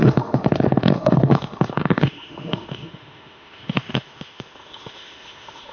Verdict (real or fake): fake